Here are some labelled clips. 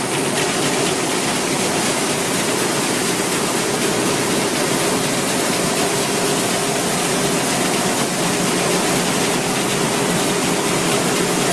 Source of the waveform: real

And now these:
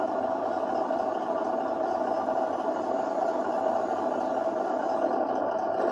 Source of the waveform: real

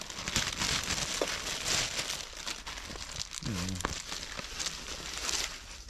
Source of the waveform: real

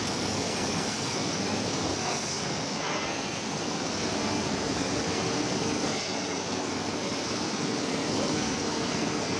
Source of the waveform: fake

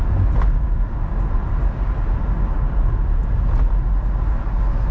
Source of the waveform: real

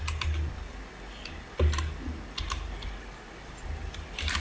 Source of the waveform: real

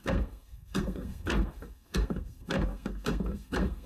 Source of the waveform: fake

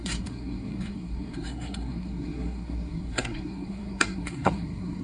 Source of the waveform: fake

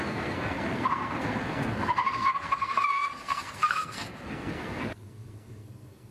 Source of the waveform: fake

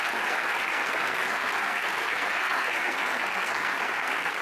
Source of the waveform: fake